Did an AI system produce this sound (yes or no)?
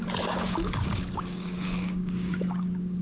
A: yes